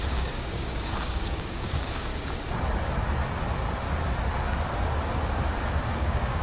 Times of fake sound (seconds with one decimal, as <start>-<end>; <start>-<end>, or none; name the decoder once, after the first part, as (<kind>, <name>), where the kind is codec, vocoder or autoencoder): 0.0-2.1 (codec, DAC); 5.9-6.4